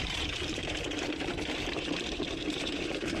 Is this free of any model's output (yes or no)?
no